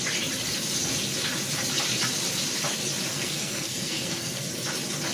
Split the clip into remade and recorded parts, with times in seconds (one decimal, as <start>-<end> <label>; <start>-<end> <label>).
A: 0.0-3.1 recorded; 3.1-4.4 remade; 4.4-5.1 recorded

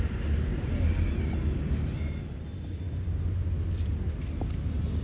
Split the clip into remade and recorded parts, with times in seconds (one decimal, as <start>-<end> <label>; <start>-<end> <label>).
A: 0.0-5.0 recorded

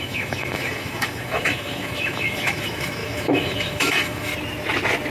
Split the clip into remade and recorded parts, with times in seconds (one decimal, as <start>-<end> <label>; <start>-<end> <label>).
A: 0.0-4.3 remade; 4.3-5.1 recorded

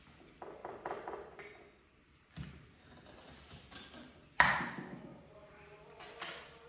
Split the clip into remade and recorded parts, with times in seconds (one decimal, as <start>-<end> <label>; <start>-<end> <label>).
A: 0.0-5.1 recorded; 5.1-6.1 remade; 6.1-6.7 recorded

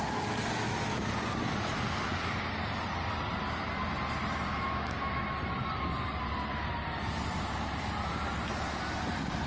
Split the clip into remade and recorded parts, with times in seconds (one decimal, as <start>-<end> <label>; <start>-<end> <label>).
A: 0.0-4.5 recorded; 4.5-5.3 remade; 5.3-9.5 recorded